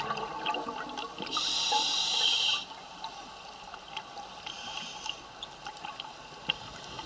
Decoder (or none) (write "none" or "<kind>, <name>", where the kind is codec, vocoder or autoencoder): none